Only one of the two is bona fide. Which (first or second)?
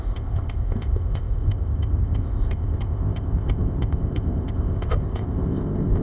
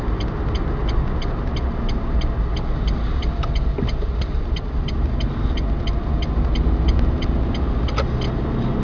second